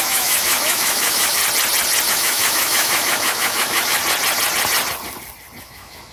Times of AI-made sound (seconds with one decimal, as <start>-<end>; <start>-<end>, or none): 0.0-1.4; 2.1-4.0; 5.6-6.1